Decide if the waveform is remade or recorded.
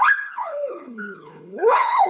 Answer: remade